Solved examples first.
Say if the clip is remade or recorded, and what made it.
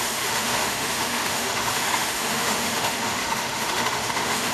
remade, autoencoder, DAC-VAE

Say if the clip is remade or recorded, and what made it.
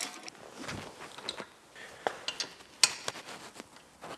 recorded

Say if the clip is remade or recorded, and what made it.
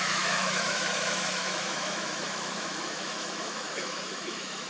remade, autoencoder, DAC-VAE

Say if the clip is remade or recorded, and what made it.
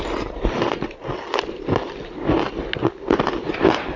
recorded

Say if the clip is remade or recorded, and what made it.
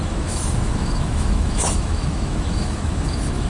remade, autoencoder, DAC-VAE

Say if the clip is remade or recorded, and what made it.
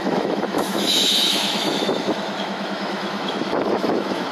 remade, autoencoder, DAC-VAE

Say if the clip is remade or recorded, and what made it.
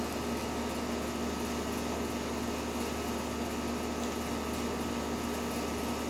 recorded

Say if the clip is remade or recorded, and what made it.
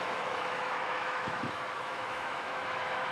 remade, autoencoder, DAC-VAE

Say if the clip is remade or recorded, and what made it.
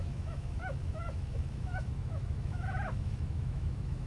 remade, autoencoder, DAC-VAE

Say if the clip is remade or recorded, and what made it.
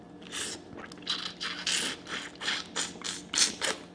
recorded